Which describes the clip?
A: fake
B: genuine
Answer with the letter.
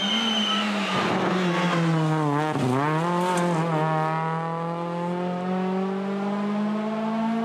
B